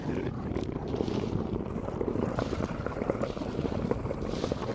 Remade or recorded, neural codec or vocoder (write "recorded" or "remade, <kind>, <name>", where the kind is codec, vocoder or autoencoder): recorded